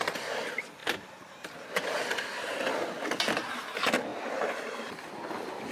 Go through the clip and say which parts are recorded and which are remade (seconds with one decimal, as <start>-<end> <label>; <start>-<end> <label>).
0.0-0.8 recorded; 0.8-2.7 remade; 2.7-4.1 recorded; 4.1-5.1 remade; 5.1-5.7 recorded